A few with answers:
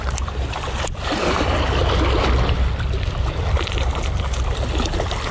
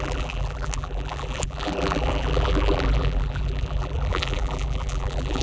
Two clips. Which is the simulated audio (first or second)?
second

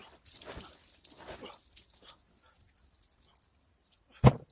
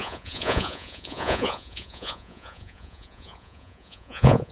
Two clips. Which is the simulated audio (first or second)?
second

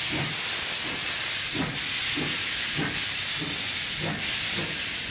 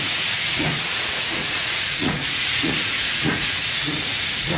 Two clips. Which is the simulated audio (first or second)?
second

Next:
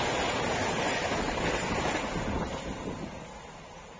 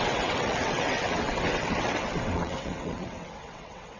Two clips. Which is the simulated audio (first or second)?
second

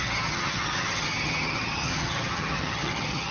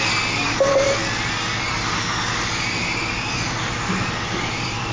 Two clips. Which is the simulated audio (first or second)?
first